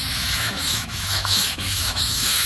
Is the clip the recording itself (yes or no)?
no